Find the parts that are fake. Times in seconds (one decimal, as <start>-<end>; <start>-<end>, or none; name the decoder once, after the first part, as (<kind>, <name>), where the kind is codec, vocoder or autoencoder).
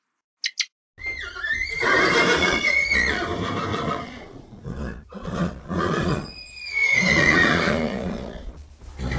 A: 2.4-3.2 (vocoder, Vocos); 3.7-8.7